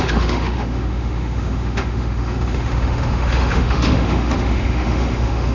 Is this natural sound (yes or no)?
no